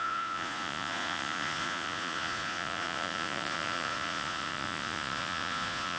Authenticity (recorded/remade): remade